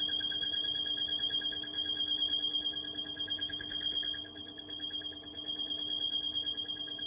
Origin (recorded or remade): recorded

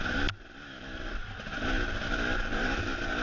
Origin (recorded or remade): recorded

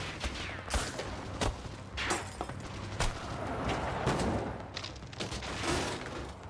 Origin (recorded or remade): recorded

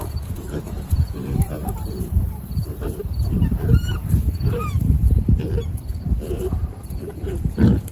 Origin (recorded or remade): remade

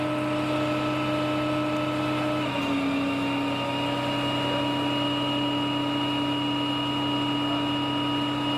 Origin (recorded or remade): recorded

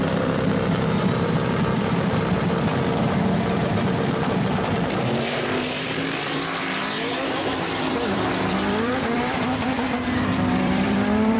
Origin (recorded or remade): remade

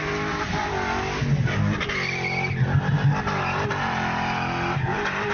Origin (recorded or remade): recorded